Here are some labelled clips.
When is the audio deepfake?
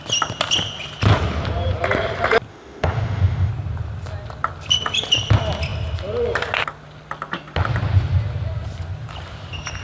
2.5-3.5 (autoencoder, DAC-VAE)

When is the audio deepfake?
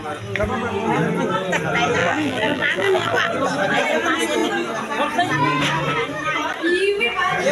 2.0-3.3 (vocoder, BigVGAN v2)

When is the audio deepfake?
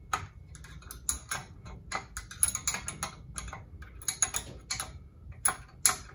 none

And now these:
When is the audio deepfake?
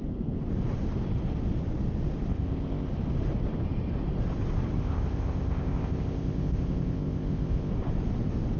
2.3-2.9 (codec, ZipCodec); 4.8-7.7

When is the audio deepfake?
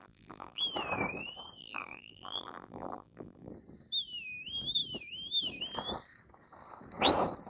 0.0-0.6 (vocoder, BigVGAN v2); 1.6-3.5